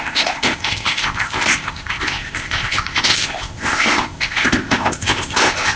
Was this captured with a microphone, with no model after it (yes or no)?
no